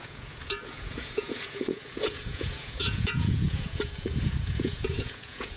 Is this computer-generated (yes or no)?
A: yes